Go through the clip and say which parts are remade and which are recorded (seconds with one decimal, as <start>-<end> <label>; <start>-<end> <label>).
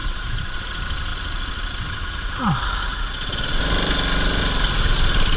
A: 0.0-0.6 remade; 0.6-2.9 recorded; 2.9-3.6 remade; 3.6-5.4 recorded